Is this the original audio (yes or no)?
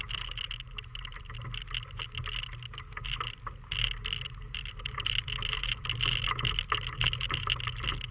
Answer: yes